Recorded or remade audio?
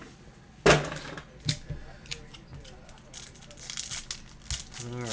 recorded